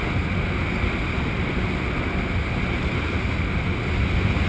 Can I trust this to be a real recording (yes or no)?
yes